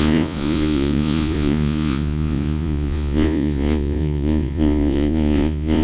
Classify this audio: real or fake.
fake